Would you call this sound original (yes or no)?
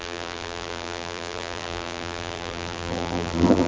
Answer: no